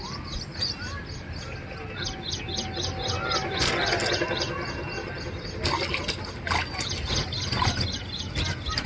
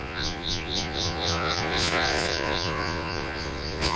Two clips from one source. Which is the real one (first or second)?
first